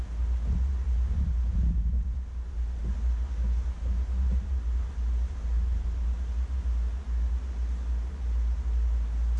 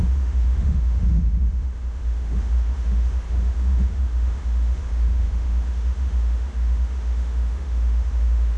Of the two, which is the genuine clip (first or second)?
first